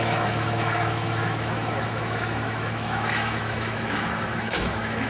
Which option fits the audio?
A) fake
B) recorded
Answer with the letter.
A